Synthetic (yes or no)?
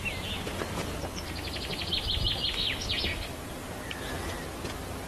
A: no